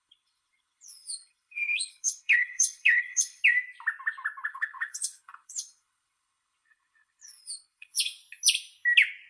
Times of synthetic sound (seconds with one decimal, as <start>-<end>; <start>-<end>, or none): 0.0-3.4; 4.5-8.2